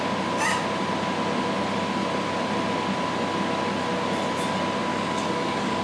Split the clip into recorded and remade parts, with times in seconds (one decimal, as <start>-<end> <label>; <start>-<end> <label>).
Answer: 0.0-4.9 recorded; 4.9-5.8 remade